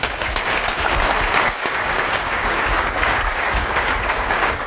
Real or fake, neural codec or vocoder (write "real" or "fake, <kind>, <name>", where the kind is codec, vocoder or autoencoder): fake, codec, DAC